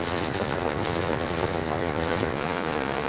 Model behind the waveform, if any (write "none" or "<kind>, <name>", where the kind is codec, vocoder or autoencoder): vocoder, Vocos